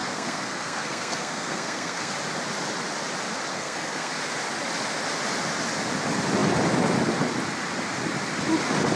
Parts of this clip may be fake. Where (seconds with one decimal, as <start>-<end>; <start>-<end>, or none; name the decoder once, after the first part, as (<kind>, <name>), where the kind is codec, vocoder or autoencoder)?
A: 0.0-2.1 (codec, SNAC); 3.5-4.1